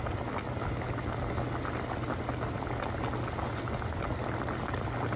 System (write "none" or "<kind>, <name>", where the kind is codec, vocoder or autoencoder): none